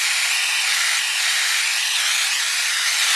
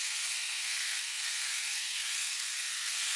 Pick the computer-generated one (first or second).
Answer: second